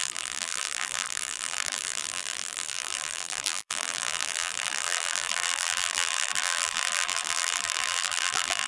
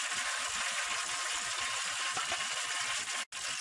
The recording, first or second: second